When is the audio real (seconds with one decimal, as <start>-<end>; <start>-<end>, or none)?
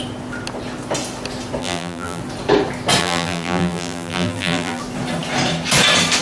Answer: 0.0-1.6; 2.2-3.0; 4.8-6.2